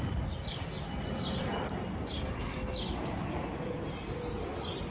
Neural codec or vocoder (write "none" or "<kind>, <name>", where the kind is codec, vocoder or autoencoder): none